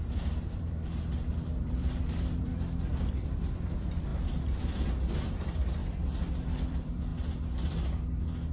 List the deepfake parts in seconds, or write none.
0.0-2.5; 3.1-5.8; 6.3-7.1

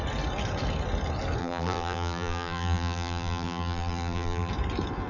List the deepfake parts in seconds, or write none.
1.4-4.5

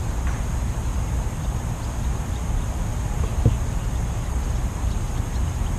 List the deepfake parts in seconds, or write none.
2.9-3.8

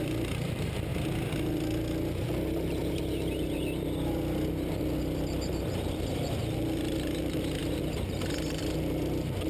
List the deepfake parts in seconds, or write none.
0.0-0.9; 5.5-9.5

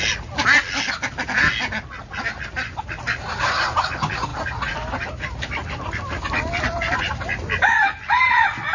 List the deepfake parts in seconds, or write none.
4.3-6.3

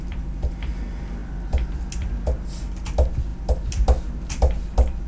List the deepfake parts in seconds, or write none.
none

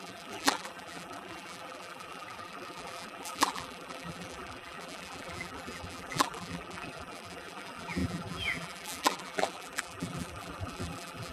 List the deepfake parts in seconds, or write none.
0.0-11.3